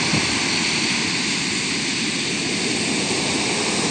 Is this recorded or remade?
recorded